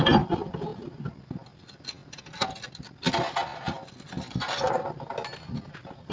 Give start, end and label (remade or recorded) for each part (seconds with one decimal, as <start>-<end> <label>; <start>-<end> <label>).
0.0-6.1 recorded

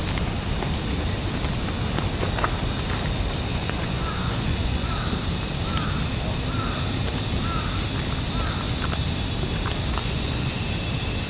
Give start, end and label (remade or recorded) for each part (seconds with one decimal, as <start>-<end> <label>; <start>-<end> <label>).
0.0-3.5 recorded; 3.5-4.9 remade; 4.9-10.0 recorded; 10.0-10.6 remade; 10.6-11.3 recorded

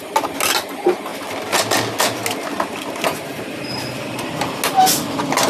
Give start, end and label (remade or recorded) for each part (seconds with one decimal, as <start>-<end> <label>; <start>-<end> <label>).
0.0-5.5 recorded

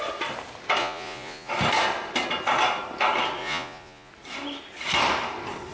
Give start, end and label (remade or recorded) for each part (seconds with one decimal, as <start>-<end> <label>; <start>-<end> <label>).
0.0-0.8 recorded; 0.8-1.5 remade; 1.5-3.4 recorded; 3.4-4.1 remade; 4.1-5.7 recorded